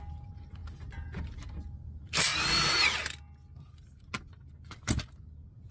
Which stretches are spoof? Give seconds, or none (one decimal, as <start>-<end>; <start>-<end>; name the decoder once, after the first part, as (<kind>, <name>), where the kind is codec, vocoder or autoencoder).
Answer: none